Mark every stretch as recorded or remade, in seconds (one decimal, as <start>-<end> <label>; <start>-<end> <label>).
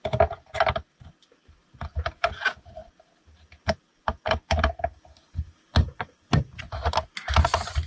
0.0-7.9 recorded